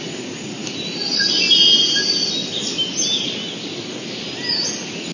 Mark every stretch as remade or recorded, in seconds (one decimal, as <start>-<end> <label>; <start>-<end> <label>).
0.0-0.6 recorded; 0.6-1.5 remade; 1.5-5.1 recorded